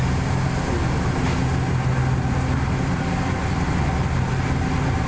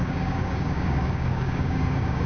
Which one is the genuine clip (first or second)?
first